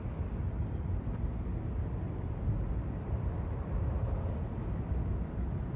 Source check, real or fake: real